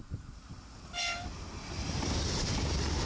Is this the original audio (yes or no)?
yes